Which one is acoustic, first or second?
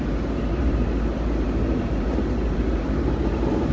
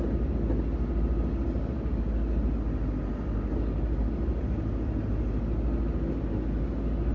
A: second